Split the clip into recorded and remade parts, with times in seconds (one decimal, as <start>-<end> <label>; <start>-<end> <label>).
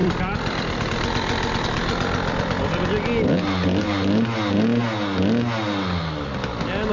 0.0-0.9 remade; 0.9-6.9 recorded